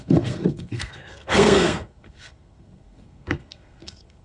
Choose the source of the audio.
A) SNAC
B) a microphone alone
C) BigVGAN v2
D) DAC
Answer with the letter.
A